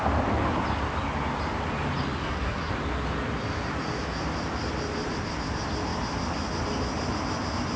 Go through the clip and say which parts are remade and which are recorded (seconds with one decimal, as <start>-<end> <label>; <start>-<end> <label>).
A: 0.0-2.2 recorded; 2.2-2.7 remade; 2.7-7.8 recorded

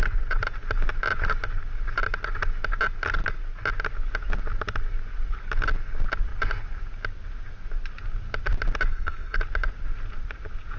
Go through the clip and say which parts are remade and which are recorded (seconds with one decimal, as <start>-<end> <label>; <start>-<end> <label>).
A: 0.0-8.9 recorded; 8.9-9.4 remade; 9.4-10.8 recorded

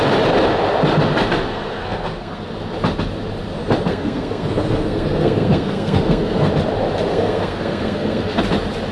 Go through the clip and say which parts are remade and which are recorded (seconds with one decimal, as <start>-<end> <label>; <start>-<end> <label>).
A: 0.0-1.5 recorded; 1.5-2.4 remade; 2.4-3.9 recorded; 3.9-6.5 remade; 6.5-7.1 recorded; 7.1-8.4 remade; 8.4-8.9 recorded

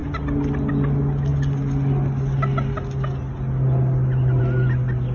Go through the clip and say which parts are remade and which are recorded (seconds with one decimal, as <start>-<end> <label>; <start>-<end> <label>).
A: 0.0-5.1 recorded